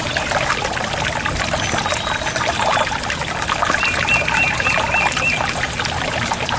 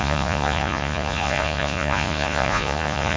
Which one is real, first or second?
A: first